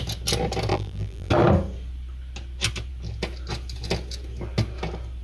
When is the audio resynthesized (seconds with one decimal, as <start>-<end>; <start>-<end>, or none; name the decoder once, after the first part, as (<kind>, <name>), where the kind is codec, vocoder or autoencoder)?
0.7-1.3 (vocoder, BigVGAN v2)